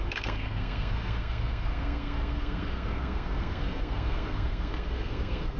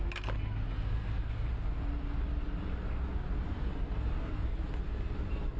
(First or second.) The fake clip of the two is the first